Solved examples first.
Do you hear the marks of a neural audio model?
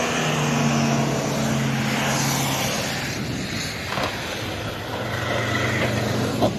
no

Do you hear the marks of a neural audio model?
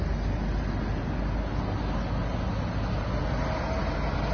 no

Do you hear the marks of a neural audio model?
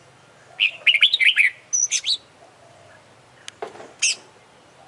no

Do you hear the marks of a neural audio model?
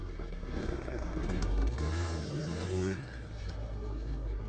yes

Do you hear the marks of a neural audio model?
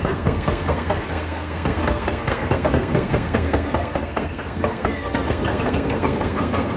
yes